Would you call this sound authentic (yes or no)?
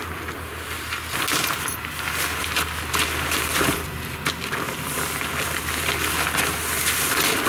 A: yes